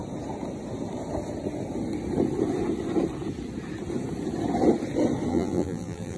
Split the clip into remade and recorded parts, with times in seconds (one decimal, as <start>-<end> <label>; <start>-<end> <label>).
0.0-5.3 recorded; 5.3-6.2 remade